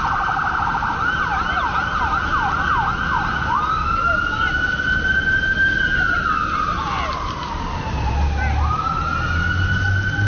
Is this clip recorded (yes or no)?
yes